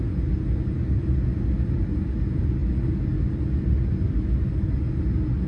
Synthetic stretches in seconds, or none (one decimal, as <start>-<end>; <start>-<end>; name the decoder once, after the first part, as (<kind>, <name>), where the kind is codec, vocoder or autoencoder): none